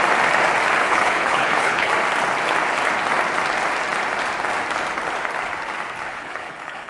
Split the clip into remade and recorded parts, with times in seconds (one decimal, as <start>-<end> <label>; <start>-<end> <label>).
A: 0.0-0.8 recorded; 0.8-1.9 remade; 1.9-6.1 recorded; 6.1-6.9 remade

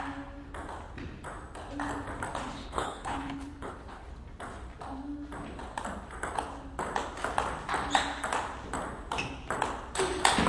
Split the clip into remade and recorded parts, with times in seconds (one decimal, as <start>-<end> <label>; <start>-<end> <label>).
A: 0.0-2.6 recorded; 2.6-4.1 remade; 4.1-10.5 recorded